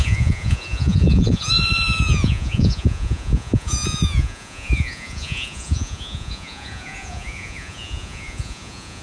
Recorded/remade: remade